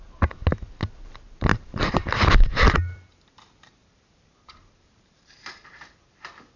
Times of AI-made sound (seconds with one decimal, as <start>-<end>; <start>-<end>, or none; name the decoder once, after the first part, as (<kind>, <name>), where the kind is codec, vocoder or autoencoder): 1.5-5.5 (vocoder, BigVGAN v2)